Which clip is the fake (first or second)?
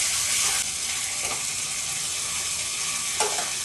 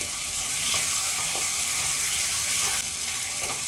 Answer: second